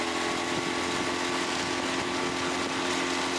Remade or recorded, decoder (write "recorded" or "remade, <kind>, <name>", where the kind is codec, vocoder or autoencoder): recorded